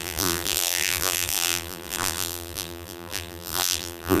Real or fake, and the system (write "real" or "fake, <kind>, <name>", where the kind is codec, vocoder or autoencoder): fake, vocoder, BigVGAN v2